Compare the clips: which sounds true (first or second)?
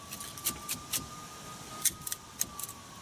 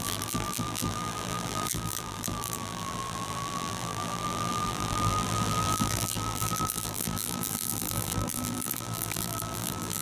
first